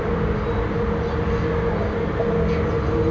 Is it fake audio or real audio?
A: real